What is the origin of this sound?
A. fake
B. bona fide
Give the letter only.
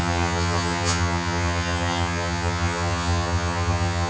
A